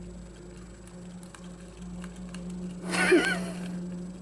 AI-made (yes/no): no